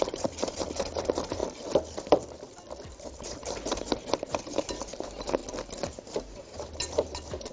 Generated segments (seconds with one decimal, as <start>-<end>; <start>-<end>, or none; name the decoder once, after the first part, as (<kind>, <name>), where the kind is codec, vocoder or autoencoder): 0.0-1.4 (vocoder, BigVGAN v2); 2.9-5.4; 5.9-7.5